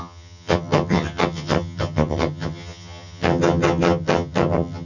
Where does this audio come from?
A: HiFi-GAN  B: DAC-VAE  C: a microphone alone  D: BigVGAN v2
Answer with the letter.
A